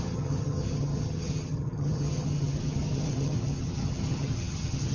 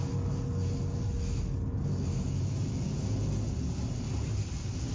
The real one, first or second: second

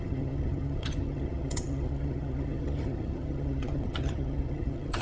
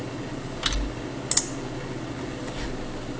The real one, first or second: second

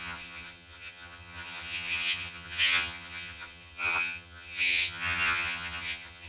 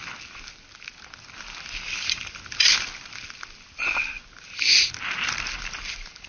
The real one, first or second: second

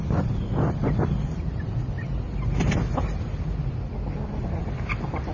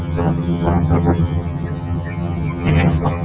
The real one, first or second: first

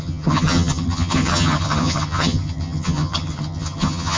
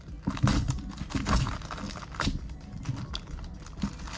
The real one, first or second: second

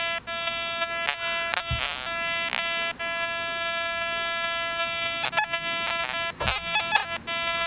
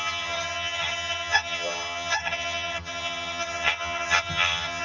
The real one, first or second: first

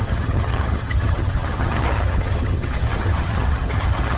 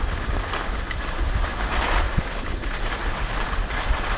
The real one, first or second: second